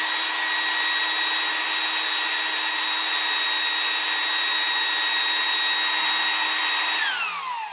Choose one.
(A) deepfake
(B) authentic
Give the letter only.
B